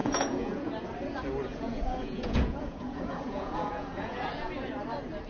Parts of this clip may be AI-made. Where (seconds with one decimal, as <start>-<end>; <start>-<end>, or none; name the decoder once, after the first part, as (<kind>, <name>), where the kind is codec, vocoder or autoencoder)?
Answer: 0.0-0.7 (vocoder, Vocos); 1.5-4.7